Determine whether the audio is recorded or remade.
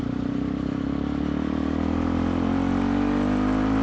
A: recorded